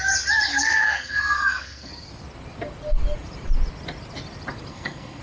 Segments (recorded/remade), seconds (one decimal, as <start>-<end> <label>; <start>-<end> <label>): 0.0-0.5 recorded; 0.5-1.9 remade; 1.9-4.7 recorded; 4.7-5.2 remade